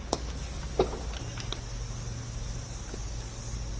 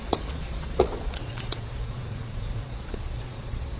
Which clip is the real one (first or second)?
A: first